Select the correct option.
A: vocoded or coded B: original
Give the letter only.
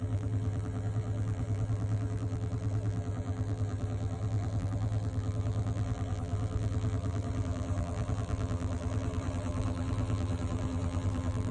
A